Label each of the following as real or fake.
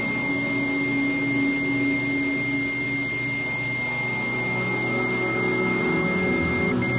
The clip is real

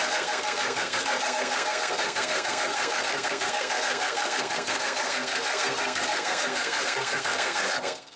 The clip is fake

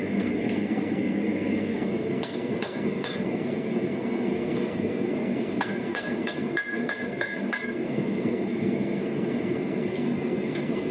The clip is fake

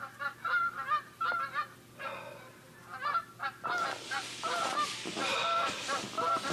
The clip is real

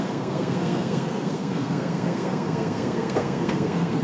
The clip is fake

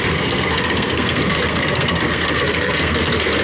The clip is fake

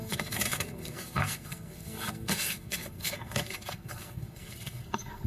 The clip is fake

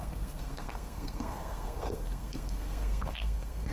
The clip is fake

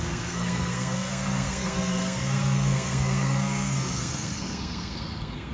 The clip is fake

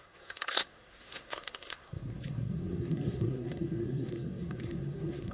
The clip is fake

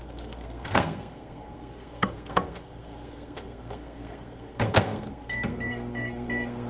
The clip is fake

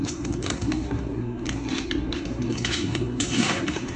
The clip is fake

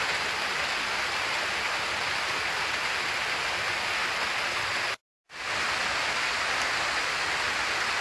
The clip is real